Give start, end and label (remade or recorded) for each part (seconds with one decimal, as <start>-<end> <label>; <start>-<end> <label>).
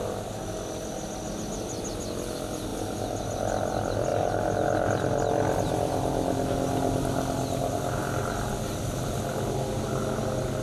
0.0-10.6 recorded